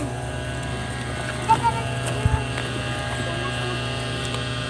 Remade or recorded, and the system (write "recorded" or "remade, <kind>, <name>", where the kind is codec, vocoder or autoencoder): recorded